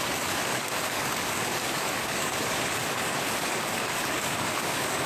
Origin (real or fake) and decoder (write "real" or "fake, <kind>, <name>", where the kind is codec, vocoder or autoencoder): fake, codec, DAC